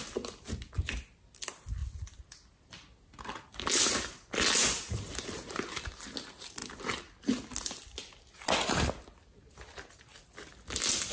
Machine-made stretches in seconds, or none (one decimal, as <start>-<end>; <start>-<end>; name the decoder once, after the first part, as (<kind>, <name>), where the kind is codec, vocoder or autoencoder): none